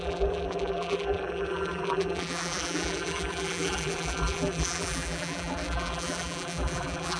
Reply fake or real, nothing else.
fake